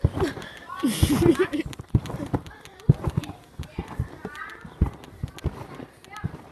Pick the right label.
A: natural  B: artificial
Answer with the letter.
A